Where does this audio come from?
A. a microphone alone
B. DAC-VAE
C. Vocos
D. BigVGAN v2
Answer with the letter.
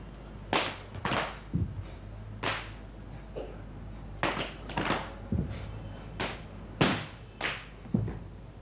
A